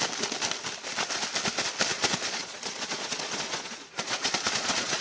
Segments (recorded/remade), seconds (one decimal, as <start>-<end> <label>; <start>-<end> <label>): 0.0-1.9 recorded; 1.9-5.0 remade